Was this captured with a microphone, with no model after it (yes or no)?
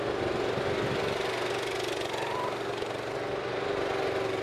yes